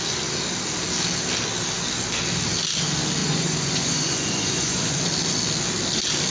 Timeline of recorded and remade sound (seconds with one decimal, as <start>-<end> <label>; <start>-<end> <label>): 0.0-3.2 recorded; 3.2-5.0 remade; 5.0-6.3 recorded